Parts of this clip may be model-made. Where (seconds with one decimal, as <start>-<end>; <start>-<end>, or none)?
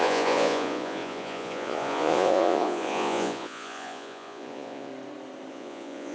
0.0-4.9; 5.5-6.1